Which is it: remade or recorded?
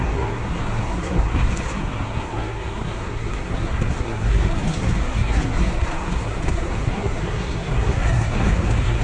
remade